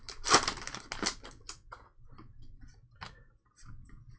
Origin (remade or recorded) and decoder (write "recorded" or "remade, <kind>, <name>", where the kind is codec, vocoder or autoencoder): recorded